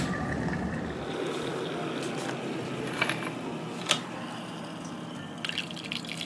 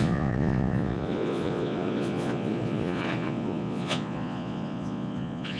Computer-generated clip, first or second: second